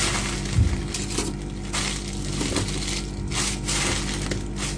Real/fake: real